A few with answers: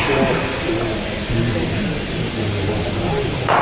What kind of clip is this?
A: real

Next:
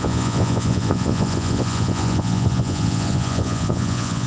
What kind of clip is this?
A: fake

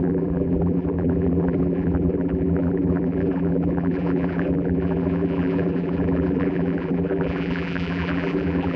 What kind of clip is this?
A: fake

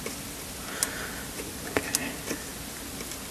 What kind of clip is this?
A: real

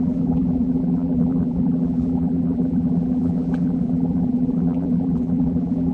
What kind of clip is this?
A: fake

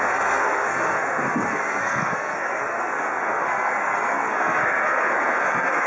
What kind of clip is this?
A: fake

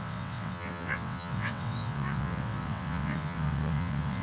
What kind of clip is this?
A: fake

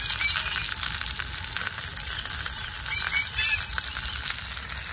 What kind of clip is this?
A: real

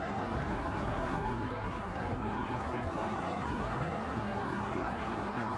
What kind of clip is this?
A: fake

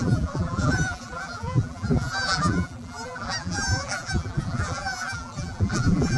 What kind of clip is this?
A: fake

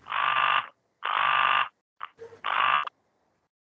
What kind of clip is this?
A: fake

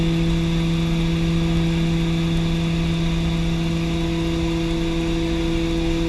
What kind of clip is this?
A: real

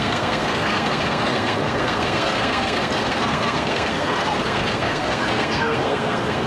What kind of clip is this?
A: fake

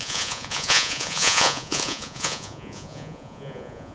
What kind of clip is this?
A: fake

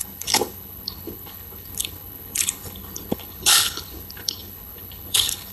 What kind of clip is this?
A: fake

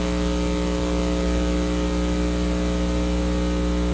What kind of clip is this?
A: real